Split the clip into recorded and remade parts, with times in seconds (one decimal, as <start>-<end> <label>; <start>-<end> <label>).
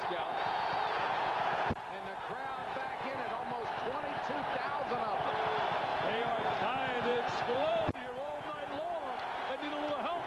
0.0-1.7 remade; 1.7-2.6 recorded; 2.6-3.4 remade; 3.4-5.9 recorded; 5.9-6.5 remade; 6.5-7.1 recorded; 7.1-9.0 remade; 9.0-10.3 recorded